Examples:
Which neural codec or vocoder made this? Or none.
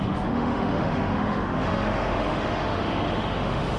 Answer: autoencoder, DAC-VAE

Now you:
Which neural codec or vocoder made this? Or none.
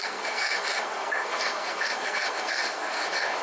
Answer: codec, SNAC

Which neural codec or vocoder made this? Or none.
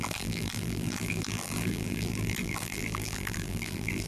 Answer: vocoder, BigVGAN v2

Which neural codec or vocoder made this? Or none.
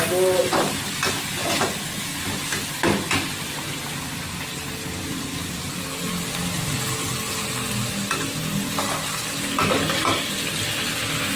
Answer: none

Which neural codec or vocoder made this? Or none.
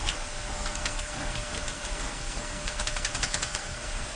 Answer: codec, SNAC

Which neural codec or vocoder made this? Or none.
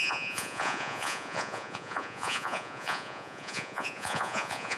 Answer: vocoder, Vocos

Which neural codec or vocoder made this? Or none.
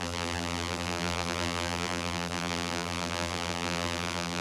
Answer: vocoder, BigVGAN v2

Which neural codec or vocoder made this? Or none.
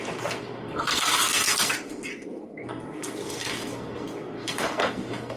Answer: codec, SNAC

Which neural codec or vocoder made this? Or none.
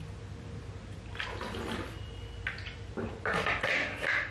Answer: none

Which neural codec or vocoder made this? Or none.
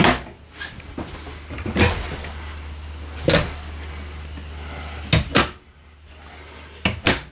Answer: none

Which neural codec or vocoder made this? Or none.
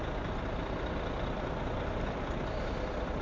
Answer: none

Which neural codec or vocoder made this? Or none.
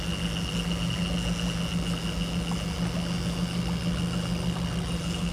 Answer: none